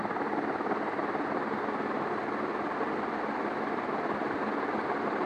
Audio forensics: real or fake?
real